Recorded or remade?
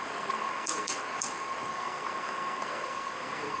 remade